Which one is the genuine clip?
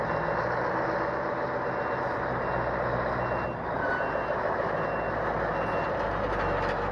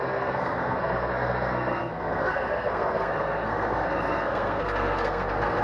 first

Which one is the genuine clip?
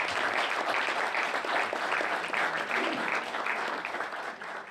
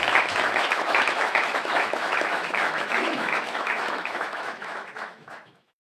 first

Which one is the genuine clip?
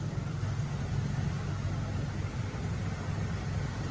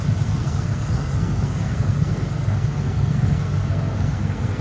first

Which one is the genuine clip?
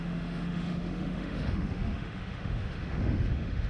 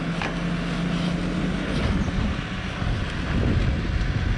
second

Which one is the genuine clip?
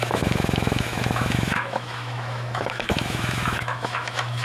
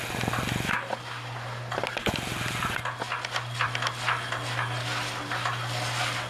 second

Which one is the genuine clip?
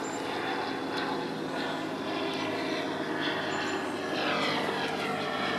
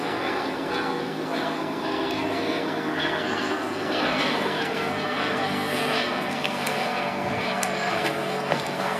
first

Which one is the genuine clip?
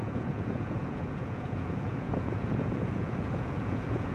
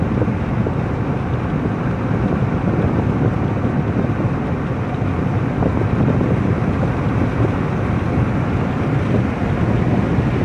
second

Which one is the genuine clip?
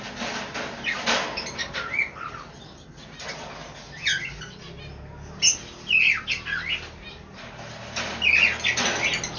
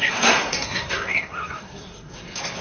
first